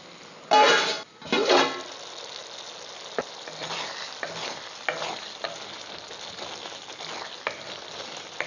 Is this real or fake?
real